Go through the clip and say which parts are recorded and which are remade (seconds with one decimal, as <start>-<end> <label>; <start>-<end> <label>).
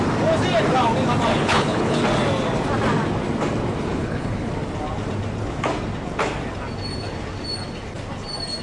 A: 0.0-1.3 recorded; 1.3-2.0 remade; 2.0-4.0 recorded; 4.0-4.5 remade; 4.5-8.6 recorded